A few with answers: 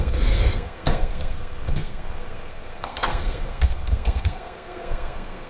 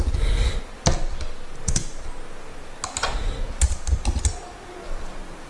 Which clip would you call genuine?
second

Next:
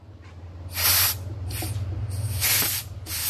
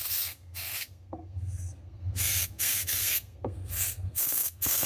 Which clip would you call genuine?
first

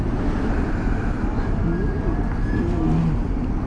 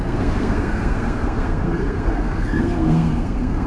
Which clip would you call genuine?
first